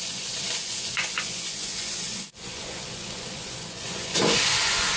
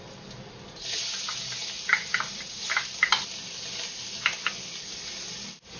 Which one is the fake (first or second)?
first